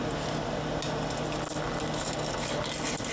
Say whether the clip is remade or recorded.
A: recorded